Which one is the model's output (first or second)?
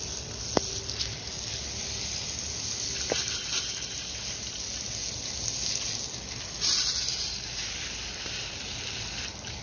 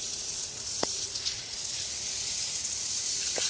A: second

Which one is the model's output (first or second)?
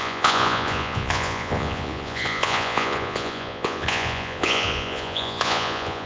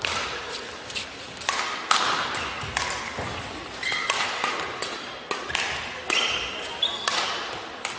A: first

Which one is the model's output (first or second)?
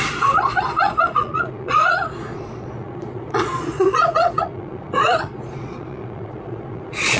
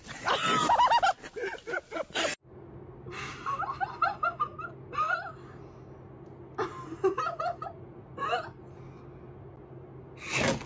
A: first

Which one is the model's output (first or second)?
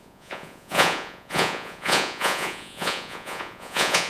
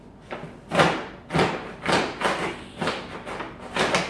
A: first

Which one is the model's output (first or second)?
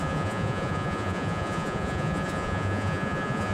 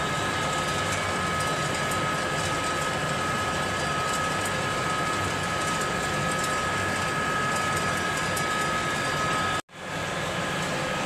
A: first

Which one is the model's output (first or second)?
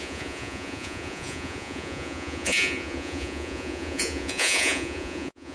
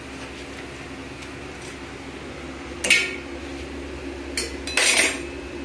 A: first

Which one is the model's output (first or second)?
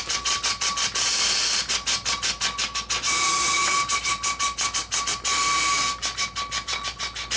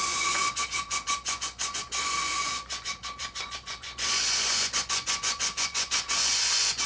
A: second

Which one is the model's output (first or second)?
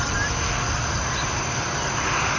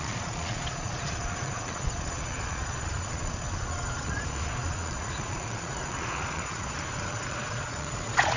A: second